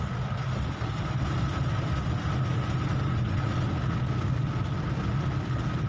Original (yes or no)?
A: yes